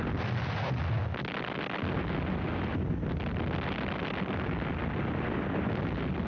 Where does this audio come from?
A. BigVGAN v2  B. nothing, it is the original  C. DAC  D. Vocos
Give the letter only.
B